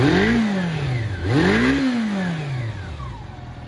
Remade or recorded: recorded